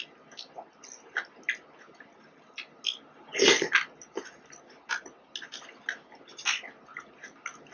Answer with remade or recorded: recorded